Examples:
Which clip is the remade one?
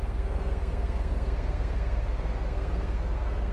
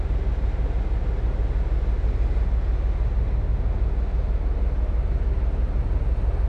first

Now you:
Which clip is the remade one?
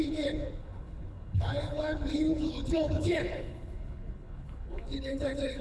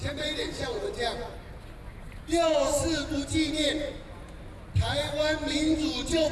first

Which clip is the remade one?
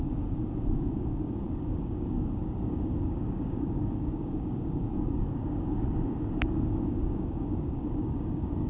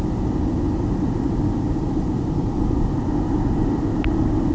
first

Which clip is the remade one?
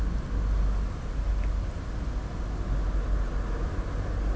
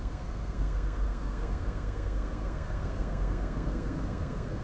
second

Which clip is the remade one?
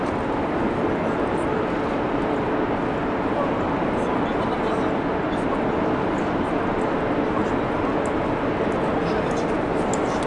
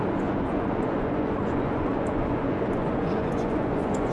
second